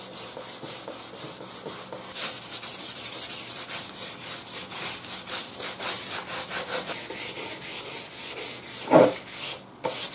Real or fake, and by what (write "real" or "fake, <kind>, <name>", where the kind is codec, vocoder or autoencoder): real